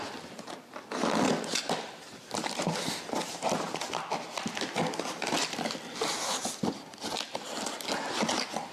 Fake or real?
real